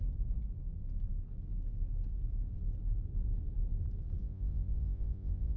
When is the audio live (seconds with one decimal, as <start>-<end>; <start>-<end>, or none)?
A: 0.0-4.2